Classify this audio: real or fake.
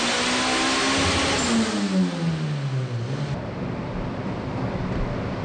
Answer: real